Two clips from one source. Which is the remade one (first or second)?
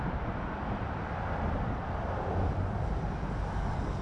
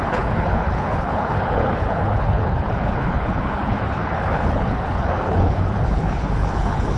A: second